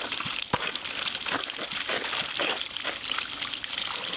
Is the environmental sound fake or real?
real